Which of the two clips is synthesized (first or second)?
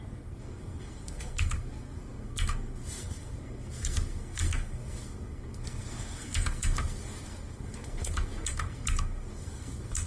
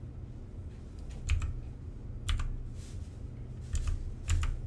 first